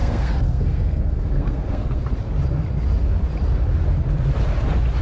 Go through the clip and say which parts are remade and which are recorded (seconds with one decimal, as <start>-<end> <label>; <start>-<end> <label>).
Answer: 0.0-2.0 remade; 2.0-5.0 recorded